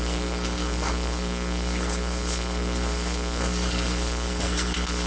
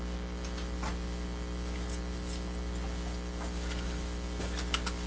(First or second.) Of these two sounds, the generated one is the first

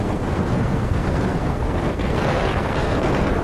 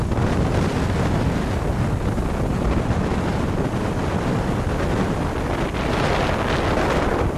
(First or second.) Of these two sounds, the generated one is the first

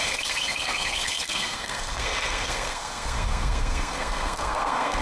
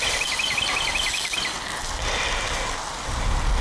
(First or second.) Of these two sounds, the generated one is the first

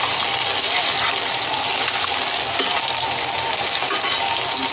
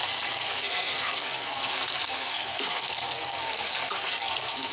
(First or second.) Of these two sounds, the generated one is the second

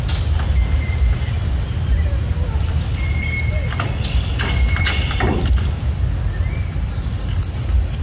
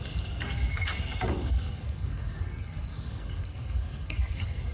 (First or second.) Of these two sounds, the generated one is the second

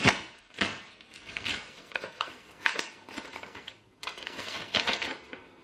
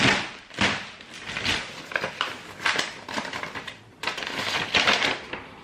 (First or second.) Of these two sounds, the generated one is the first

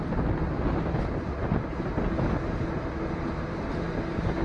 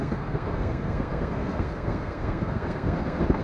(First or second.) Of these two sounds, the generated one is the second